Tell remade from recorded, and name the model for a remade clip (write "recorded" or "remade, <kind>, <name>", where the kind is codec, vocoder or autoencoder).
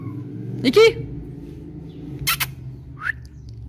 recorded